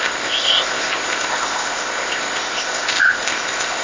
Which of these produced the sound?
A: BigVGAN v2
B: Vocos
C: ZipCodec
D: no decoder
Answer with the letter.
C